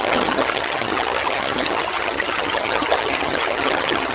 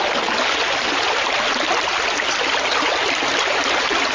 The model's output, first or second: first